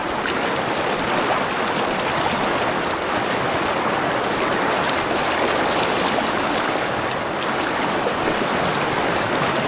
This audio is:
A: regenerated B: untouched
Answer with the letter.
B